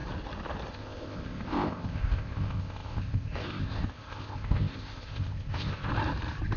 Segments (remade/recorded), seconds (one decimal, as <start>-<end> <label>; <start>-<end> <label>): 0.0-0.7 recorded; 0.7-5.9 remade; 5.9-6.6 recorded